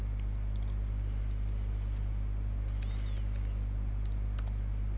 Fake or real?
real